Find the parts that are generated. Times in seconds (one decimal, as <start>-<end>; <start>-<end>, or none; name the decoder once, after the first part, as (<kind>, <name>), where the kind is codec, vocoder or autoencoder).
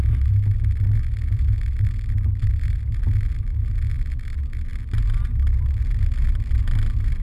none